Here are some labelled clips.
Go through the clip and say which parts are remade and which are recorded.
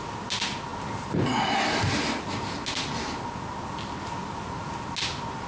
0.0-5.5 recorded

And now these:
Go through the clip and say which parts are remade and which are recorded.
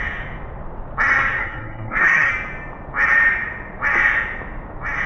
0.0-1.4 recorded; 1.4-2.3 remade; 2.3-5.1 recorded